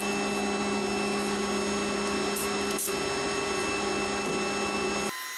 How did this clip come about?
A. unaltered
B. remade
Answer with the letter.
A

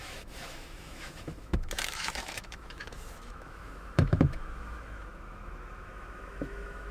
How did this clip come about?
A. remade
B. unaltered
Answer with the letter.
A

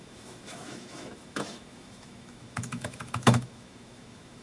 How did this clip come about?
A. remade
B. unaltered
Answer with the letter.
A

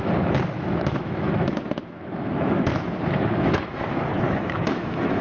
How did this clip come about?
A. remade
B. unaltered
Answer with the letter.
A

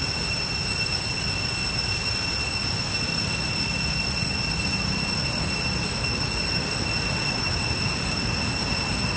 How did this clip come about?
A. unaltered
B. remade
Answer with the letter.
A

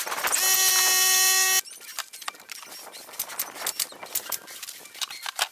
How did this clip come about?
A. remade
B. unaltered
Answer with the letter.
B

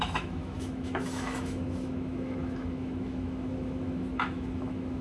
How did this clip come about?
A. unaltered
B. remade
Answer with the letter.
B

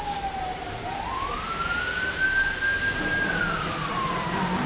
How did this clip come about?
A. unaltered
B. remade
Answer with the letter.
A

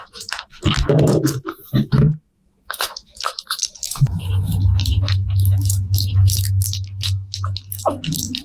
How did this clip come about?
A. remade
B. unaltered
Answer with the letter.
A